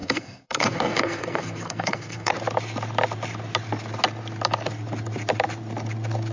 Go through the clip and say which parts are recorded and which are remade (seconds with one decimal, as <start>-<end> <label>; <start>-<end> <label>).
0.0-2.3 remade; 2.3-6.3 recorded

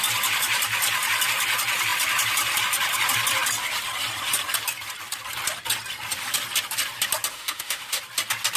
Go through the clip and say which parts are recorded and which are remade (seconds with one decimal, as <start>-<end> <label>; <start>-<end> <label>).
0.0-7.3 recorded; 7.3-8.0 remade; 8.0-8.6 recorded

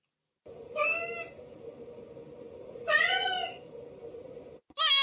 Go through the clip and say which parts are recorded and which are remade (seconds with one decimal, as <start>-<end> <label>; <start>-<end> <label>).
0.0-2.6 recorded; 2.6-3.3 remade; 3.3-5.0 recorded

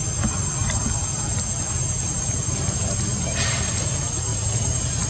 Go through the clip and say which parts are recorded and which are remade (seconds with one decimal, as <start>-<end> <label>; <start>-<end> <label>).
0.0-5.1 recorded